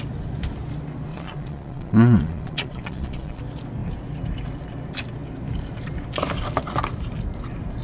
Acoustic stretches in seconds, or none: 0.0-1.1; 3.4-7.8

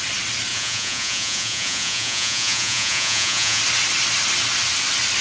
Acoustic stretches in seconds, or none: 0.0-0.5; 3.6-5.2

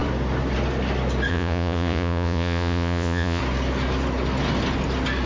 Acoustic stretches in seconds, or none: 0.0-1.3; 3.4-5.3

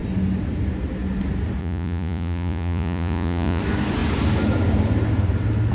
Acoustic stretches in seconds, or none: 0.0-1.6; 3.6-5.7